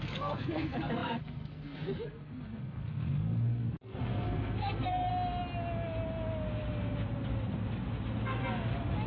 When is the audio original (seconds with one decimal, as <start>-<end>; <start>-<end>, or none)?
5.1-9.1